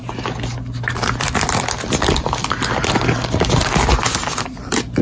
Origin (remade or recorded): recorded